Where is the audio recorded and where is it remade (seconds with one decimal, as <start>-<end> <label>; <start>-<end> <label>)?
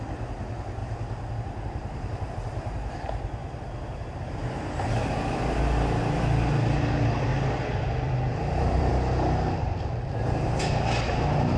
0.0-0.8 recorded; 0.8-2.3 remade; 2.3-3.4 recorded; 3.4-4.8 remade; 4.8-7.3 recorded; 7.3-8.9 remade; 8.9-11.6 recorded